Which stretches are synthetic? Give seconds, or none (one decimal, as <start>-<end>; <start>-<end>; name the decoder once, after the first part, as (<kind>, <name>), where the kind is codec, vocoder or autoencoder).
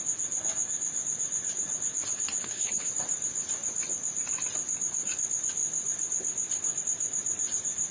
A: 2.4-2.9 (codec, HILCodec)